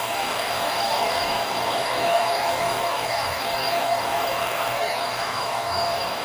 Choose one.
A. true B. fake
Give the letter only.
B